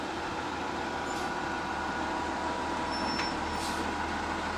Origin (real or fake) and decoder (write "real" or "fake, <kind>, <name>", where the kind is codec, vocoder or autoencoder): real